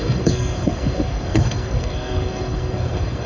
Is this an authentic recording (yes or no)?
no